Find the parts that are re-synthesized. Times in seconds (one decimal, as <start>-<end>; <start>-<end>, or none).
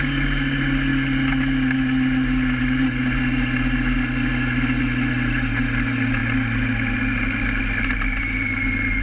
none